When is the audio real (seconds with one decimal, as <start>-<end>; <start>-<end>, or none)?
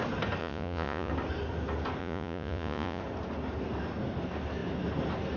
0.0-0.4; 1.1-2.0; 3.0-5.4